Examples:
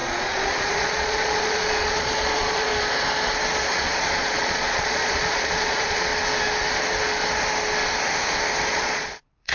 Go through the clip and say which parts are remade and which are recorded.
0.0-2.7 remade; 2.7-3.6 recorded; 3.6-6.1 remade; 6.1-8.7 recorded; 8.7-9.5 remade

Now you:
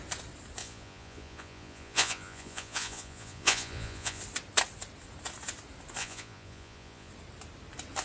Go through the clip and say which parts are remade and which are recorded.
0.0-0.6 recorded; 0.6-4.2 remade; 4.2-6.0 recorded; 6.0-7.1 remade; 7.1-8.0 recorded